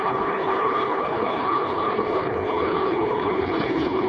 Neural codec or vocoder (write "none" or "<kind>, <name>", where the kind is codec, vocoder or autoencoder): codec, HILCodec